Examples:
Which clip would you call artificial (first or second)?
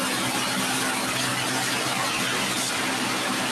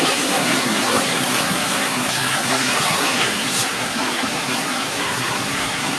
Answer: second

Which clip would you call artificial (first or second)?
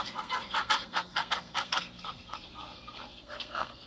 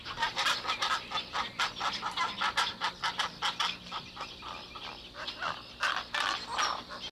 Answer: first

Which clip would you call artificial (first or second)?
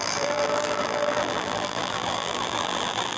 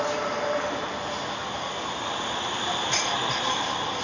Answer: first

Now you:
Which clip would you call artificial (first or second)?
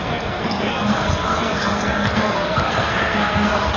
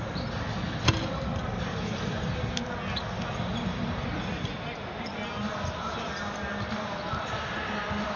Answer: first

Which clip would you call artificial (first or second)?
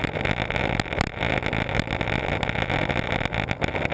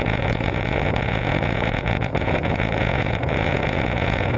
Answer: second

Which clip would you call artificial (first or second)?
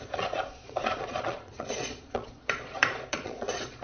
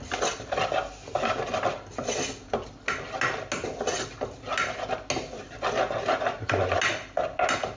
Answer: first